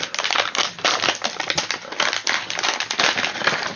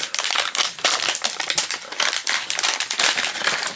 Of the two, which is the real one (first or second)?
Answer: first